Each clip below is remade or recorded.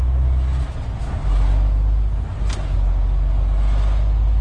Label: recorded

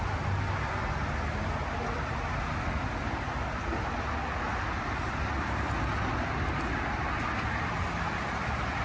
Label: recorded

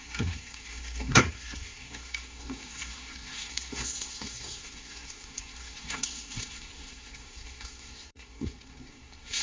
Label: remade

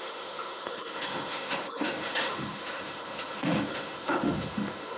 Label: remade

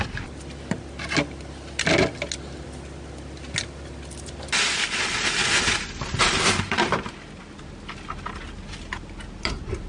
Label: recorded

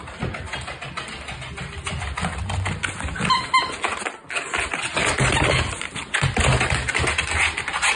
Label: recorded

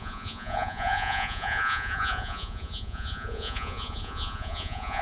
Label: remade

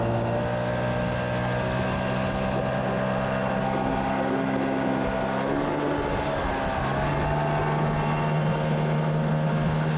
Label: recorded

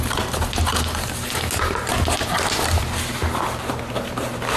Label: recorded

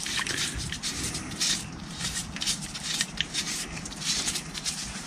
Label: remade